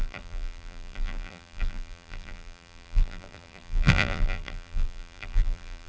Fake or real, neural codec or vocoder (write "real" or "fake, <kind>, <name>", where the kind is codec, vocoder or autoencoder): fake, vocoder, BigVGAN v2